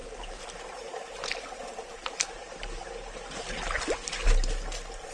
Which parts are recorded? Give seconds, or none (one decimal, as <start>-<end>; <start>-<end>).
2.9-5.1